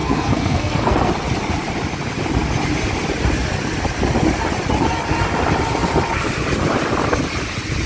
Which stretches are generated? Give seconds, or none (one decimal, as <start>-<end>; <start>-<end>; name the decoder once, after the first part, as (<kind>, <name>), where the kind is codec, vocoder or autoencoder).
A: 0.0-1.1 (codec, SNAC)

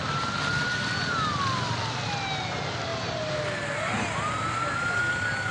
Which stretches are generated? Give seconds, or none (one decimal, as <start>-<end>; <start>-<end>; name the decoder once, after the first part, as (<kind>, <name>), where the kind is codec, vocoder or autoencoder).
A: none